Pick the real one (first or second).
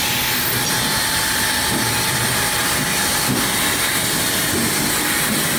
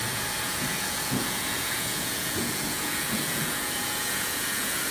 first